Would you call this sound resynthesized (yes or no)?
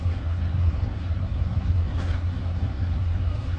yes